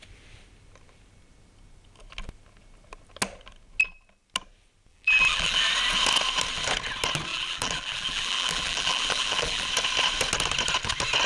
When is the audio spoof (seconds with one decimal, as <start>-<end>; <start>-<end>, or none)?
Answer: 4.9-5.6; 7.3-9.7